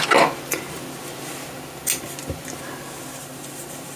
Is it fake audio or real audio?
real